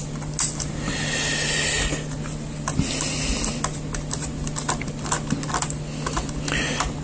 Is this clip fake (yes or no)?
no